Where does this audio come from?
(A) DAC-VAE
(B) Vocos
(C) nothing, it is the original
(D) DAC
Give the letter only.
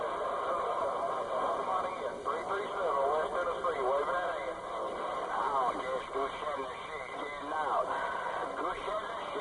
C